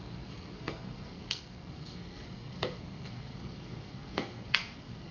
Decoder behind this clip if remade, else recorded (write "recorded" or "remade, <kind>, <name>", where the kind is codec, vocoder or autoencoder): remade, codec, SNAC